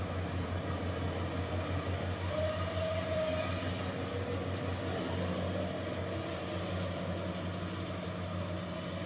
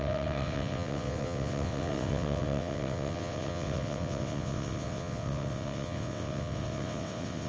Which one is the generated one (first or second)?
second